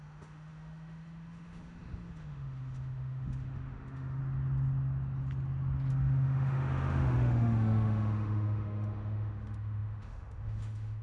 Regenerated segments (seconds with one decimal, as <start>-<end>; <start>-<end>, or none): 0.0-4.2; 5.9-11.0